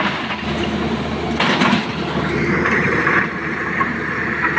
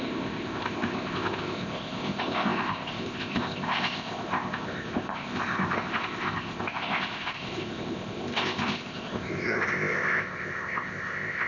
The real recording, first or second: first